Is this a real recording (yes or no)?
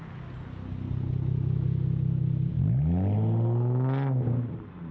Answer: yes